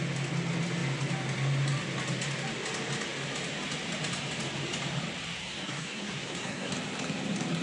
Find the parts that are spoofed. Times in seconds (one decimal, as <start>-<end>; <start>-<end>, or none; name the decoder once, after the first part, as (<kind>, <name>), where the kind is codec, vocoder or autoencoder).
5.4-6.7 (codec, SNAC)